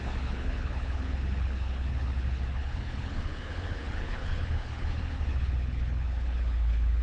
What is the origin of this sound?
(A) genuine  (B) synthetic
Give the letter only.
B